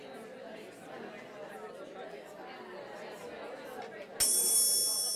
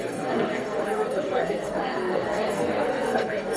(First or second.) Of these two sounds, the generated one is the second